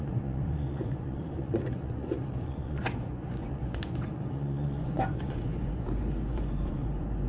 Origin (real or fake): fake